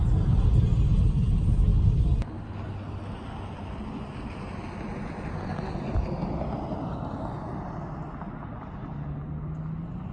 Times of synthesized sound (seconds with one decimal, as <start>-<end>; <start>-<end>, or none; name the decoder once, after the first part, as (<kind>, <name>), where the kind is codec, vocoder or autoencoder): none